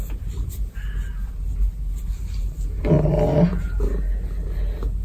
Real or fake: real